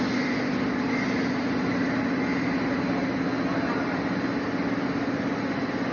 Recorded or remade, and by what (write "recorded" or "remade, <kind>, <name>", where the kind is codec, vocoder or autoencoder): recorded